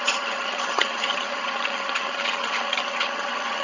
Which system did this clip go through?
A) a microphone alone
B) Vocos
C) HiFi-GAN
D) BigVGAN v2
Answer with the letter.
C